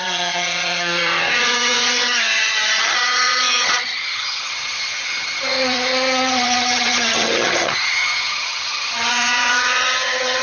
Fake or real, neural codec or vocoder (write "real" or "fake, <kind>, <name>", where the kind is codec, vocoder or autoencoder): fake, vocoder, HiFi-GAN